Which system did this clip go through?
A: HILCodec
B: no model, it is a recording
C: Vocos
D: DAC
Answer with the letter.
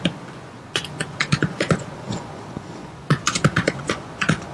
C